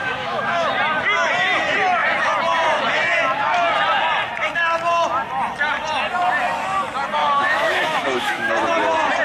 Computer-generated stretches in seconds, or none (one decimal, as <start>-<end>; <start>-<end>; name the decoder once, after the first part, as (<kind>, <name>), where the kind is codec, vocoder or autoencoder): 0.0-0.7 (autoencoder, DAC-VAE); 7.2-8.5